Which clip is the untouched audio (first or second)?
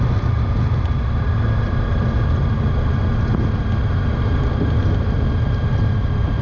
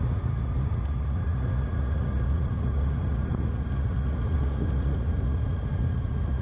first